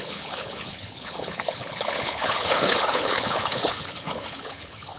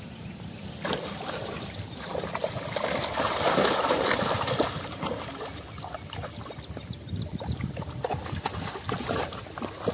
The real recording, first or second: second